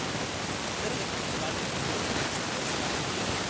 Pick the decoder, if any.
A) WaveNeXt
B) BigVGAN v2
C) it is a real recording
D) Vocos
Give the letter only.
C